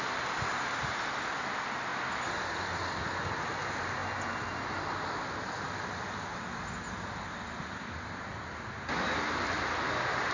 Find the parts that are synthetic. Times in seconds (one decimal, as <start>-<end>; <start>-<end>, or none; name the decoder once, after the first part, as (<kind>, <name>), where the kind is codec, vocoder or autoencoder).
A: none